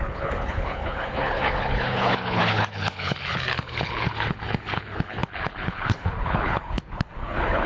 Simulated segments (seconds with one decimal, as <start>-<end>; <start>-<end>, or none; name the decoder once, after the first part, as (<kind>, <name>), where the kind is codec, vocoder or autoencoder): 0.0-7.7 (codec, HILCodec)